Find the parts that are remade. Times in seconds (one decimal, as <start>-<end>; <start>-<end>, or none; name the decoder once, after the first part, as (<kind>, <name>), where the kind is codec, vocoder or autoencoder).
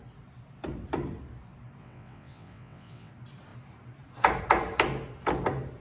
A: 1.8-3.1 (vocoder, WaveNeXt)